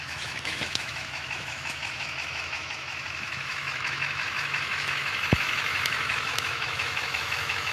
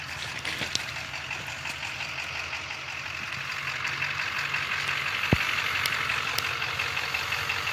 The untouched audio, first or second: second